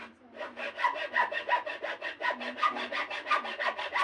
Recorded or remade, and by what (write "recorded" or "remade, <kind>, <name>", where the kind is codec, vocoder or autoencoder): recorded